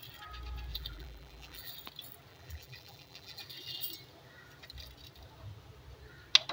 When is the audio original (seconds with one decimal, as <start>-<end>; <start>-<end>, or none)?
0.0-0.7; 1.7-2.3; 3.4-6.5